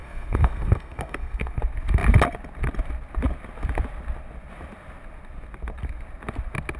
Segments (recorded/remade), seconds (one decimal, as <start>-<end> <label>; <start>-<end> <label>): 0.0-1.6 remade; 1.6-6.8 recorded